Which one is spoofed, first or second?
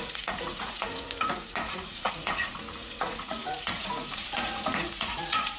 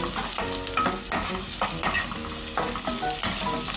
first